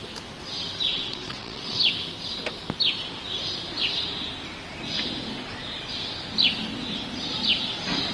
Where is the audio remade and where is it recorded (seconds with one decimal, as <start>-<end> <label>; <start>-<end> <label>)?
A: 0.0-0.9 recorded; 0.9-1.8 remade; 1.8-8.1 recorded